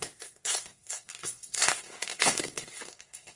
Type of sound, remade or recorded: remade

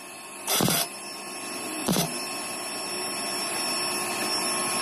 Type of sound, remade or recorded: recorded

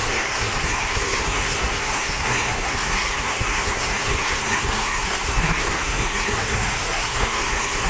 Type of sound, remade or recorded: remade